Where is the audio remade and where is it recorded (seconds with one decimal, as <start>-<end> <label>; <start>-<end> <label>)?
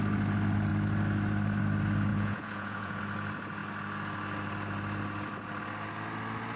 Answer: 0.0-2.1 recorded; 2.1-3.0 remade; 3.0-6.6 recorded